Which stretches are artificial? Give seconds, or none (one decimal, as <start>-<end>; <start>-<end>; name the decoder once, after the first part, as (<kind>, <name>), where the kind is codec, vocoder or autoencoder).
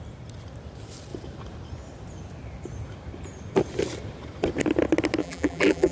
5.2-5.9 (vocoder, BigVGAN v2)